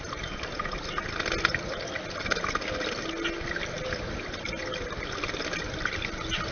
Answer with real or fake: real